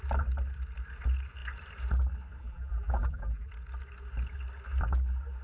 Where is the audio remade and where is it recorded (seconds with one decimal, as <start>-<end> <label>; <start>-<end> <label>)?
0.0-2.4 recorded; 2.4-3.5 remade; 3.5-5.4 recorded